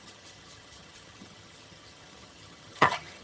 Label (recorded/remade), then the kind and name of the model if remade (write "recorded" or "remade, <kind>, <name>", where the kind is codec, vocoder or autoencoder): remade, vocoder, HiFi-GAN